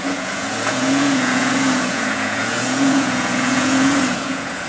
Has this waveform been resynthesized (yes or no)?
yes